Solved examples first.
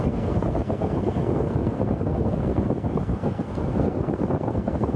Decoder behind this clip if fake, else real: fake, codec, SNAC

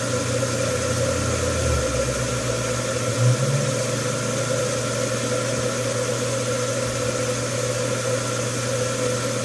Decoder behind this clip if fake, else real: real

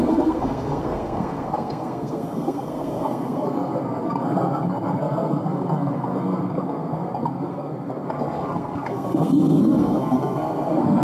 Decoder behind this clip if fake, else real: fake, codec, SNAC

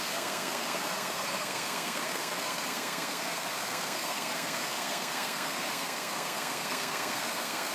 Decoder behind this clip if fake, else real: fake, codec, SNAC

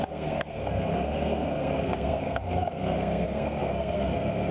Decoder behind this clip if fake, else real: fake, codec, SNAC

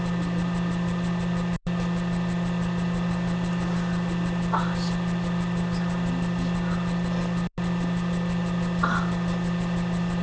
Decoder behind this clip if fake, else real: real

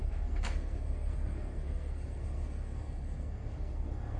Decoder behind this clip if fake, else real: fake, codec, SNAC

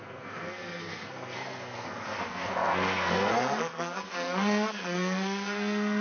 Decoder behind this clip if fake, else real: fake, codec, SNAC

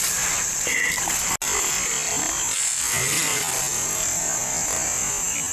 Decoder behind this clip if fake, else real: real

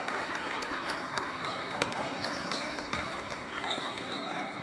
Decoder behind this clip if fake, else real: fake, codec, SNAC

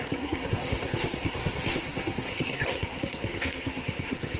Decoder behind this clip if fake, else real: fake, codec, SNAC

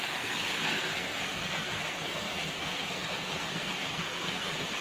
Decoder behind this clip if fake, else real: fake, codec, SNAC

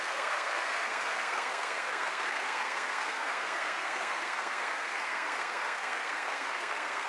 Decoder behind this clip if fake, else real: fake, codec, SNAC